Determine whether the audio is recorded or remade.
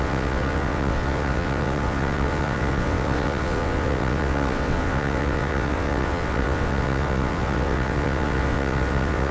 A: remade